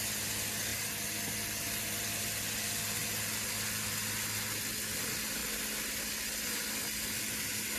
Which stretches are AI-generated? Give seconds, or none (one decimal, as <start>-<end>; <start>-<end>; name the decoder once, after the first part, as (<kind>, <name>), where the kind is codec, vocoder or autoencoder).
none